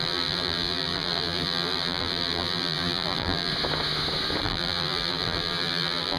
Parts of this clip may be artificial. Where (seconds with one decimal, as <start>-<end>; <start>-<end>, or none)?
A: 0.0-3.5; 4.4-6.2